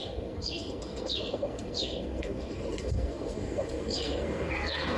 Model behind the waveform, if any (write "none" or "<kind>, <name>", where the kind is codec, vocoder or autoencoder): codec, SNAC